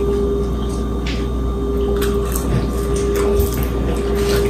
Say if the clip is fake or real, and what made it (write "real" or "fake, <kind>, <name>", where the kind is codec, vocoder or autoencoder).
real